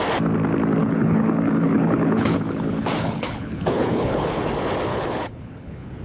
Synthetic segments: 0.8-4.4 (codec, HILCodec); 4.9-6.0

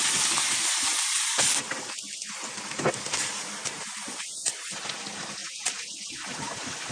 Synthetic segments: none

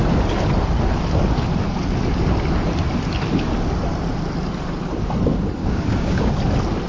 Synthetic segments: 5.6-6.3 (codec, DAC)

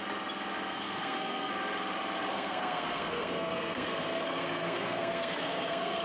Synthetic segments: 0.7-1.5 (codec, SNAC); 2.3-6.0

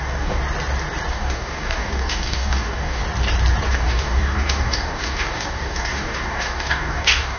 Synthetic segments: 0.0-0.4 (codec, DAC); 1.1-3.0; 3.7-7.4

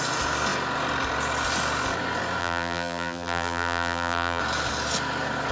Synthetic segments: 2.4-4.4 (vocoder, BigVGAN v2)

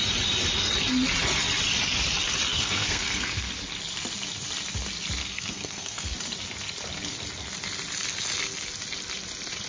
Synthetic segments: 2.5-3.5 (codec, SNAC); 5.2-6.1